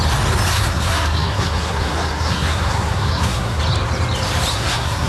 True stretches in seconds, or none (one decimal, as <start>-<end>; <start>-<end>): 0.0-0.5; 3.6-4.5